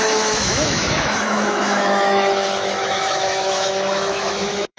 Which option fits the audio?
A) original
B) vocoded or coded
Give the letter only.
B